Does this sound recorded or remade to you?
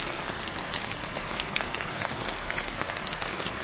remade